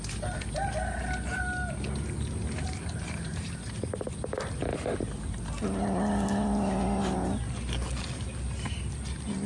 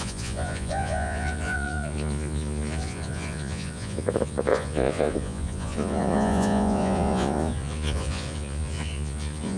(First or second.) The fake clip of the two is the second